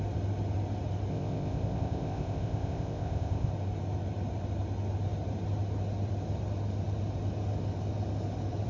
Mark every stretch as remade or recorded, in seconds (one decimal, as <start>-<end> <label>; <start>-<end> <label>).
0.0-1.1 recorded; 1.1-3.5 remade; 3.5-8.7 recorded